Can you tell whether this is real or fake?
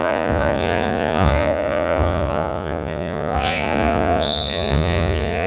fake